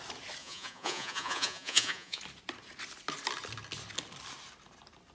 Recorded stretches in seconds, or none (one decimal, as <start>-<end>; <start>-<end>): 0.0-0.4; 2.2-5.1